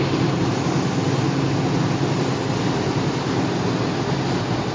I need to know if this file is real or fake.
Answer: real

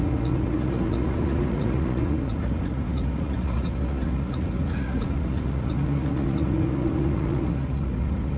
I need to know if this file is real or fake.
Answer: fake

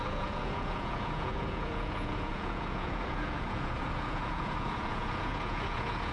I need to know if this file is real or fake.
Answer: fake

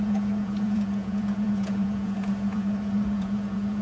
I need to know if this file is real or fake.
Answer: fake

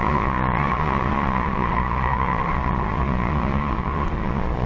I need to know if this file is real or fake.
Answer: fake